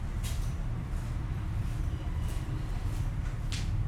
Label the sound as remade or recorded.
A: recorded